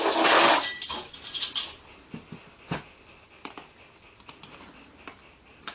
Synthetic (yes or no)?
no